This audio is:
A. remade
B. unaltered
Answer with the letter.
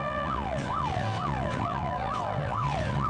A